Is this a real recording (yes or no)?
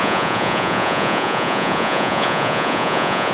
no